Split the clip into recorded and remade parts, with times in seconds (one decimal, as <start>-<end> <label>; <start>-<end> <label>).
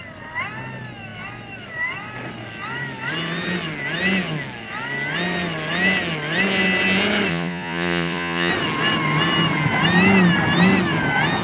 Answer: 0.0-7.3 recorded; 7.3-8.5 remade; 8.5-11.4 recorded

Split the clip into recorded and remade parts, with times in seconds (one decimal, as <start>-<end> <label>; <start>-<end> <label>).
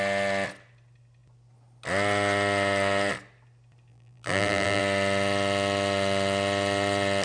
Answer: 0.0-3.9 recorded; 3.9-4.8 remade; 4.8-7.2 recorded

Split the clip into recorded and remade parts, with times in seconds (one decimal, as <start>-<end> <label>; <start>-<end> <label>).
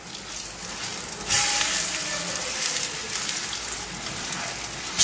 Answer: 0.0-5.0 recorded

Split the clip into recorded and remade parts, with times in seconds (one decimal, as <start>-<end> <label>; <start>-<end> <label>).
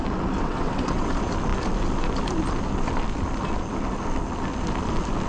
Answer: 0.0-0.4 recorded; 0.4-1.1 remade; 1.1-5.3 recorded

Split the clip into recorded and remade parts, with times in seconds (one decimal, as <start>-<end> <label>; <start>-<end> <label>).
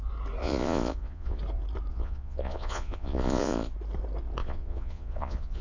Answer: 0.0-0.4 recorded; 0.4-1.4 remade; 1.4-1.9 recorded; 1.9-3.7 remade; 3.7-4.4 recorded; 4.4-5.6 remade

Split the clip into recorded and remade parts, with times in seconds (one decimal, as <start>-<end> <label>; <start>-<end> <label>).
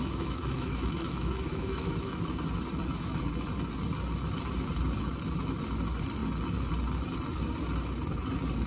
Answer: 0.0-2.2 remade; 2.2-8.7 recorded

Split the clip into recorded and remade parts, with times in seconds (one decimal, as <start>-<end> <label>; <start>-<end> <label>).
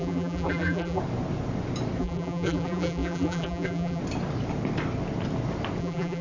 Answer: 0.0-1.0 remade; 1.0-2.0 recorded; 2.0-4.0 remade; 4.0-5.8 recorded; 5.8-6.2 remade